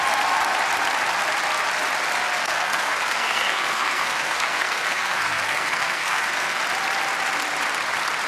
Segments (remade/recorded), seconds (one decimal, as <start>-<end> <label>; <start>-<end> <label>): 0.0-2.4 recorded; 2.4-6.6 remade; 6.6-8.3 recorded